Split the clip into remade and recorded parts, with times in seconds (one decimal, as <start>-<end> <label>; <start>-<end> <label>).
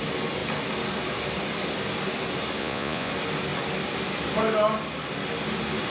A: 0.0-2.6 recorded; 2.6-3.1 remade; 3.1-5.9 recorded